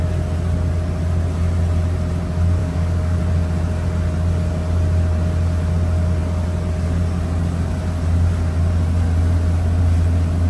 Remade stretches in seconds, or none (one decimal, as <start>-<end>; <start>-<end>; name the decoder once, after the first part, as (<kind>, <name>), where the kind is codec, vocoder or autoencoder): 2.6-3.2 (codec, DAC)